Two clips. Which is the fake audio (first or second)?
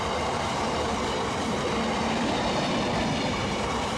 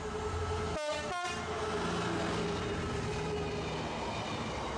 first